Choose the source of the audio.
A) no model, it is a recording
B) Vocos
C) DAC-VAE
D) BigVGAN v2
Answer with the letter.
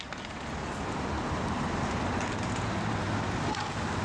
A